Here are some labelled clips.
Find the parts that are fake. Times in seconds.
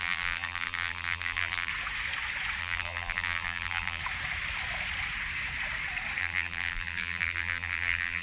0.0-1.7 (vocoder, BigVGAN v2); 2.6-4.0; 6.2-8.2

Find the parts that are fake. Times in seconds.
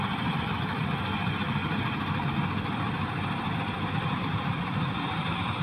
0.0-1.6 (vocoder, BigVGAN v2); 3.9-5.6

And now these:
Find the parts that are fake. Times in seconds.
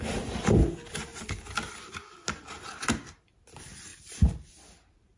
3.9-5.2 (vocoder, BigVGAN v2)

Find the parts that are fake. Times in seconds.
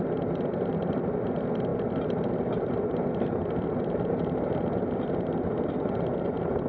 none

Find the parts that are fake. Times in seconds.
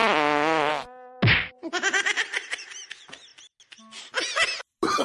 2.4-2.9 (vocoder, BigVGAN v2)